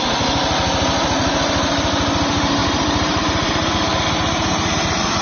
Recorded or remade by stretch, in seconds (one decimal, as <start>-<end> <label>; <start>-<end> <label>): 0.0-2.6 recorded; 2.6-3.2 remade; 3.2-5.2 recorded